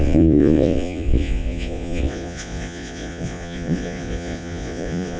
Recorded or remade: remade